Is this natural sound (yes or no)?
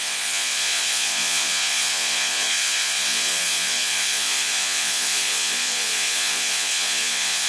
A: no